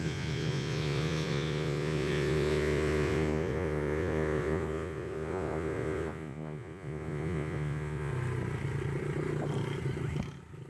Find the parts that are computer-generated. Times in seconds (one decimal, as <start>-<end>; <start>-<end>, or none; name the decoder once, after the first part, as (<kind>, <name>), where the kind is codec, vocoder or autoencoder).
0.0-8.1 (vocoder, Vocos)